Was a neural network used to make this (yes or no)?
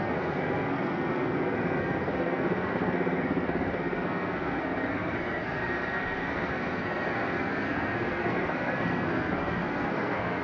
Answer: yes